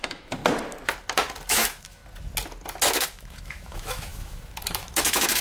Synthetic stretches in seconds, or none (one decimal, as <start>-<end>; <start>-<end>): 0.0-0.4; 1.5-2.0; 2.9-5.4